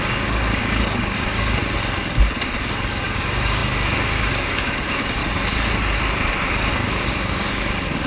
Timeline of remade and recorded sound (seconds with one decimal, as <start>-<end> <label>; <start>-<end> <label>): 0.0-1.6 remade; 1.6-2.9 recorded; 2.9-5.2 remade; 5.2-6.7 recorded; 6.7-8.1 remade